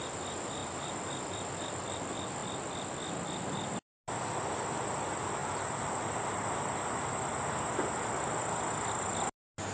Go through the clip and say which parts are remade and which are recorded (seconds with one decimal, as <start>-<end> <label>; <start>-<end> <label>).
0.0-9.7 recorded